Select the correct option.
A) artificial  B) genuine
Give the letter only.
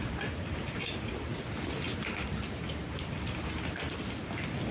B